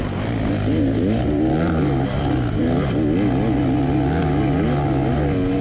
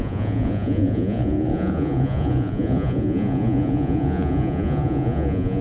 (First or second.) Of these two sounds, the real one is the first